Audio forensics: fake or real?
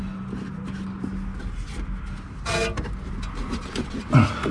real